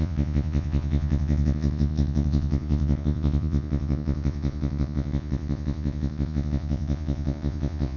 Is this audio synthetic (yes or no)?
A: yes